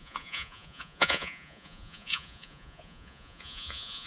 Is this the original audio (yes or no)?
no